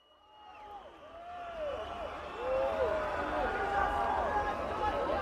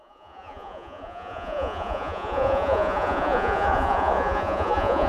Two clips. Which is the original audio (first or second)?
first